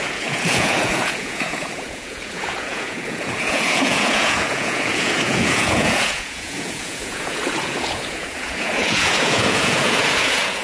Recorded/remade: remade